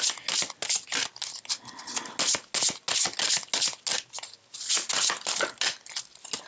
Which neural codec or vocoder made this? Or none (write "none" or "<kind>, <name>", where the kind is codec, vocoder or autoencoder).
none